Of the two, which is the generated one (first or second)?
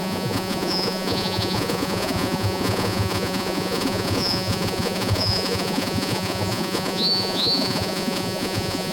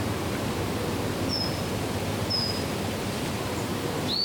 first